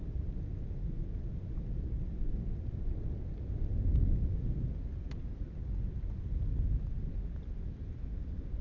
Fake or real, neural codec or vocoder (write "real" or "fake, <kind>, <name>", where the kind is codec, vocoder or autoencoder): real